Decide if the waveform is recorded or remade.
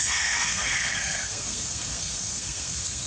remade